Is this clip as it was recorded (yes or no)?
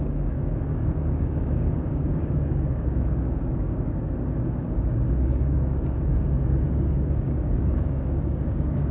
no